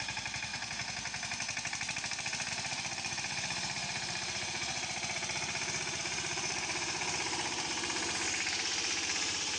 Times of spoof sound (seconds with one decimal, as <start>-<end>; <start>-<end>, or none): 0.0-0.5; 2.5-4.7; 6.0-9.6